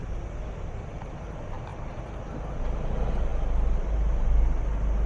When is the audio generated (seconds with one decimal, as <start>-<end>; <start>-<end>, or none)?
none